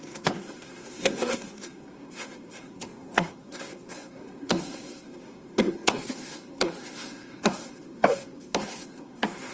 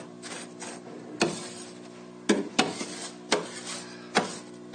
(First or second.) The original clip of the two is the second